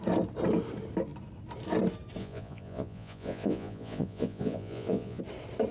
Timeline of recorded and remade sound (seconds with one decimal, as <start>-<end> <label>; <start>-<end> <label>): 0.0-2.2 recorded; 2.2-5.2 remade; 5.2-5.7 recorded